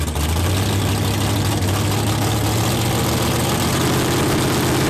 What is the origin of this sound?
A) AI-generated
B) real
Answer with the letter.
B